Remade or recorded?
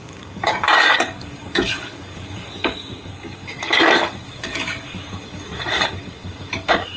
remade